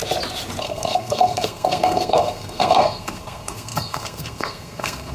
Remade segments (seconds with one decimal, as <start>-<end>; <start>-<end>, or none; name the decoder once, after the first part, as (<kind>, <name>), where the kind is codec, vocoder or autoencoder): 0.6-5.1 (codec, SNAC)